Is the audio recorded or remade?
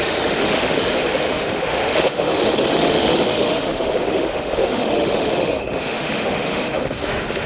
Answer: remade